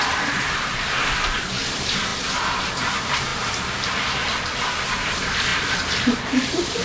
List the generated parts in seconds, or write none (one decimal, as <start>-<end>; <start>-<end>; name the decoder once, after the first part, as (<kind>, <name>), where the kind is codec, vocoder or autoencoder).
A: 0.0-2.1 (vocoder, BigVGAN v2); 2.6-6.8